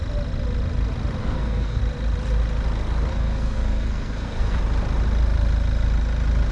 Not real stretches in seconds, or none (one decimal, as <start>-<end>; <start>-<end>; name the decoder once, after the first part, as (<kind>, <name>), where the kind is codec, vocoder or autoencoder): 1.2-1.8 (codec, SNAC); 3.1-4.6